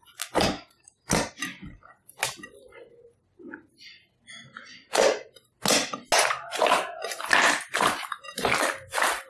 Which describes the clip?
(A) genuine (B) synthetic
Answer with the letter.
A